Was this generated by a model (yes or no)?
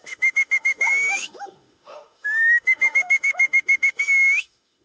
yes